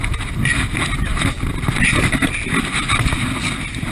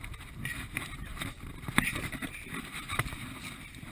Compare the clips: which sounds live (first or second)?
first